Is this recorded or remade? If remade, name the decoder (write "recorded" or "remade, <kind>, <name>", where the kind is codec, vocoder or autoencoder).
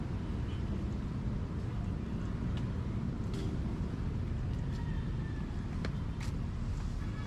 recorded